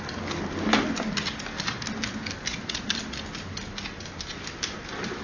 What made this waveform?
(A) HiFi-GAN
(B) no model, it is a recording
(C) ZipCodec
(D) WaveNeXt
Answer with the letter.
B